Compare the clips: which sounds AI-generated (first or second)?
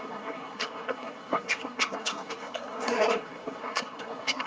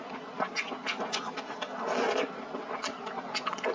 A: first